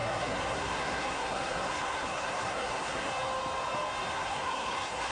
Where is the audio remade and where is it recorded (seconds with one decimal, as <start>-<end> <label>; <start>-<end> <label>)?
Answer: 0.0-3.1 remade; 3.1-4.1 recorded; 4.1-5.1 remade